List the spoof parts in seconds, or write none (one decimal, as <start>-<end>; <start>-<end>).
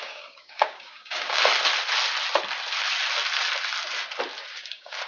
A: 0.0-1.4; 4.5-5.1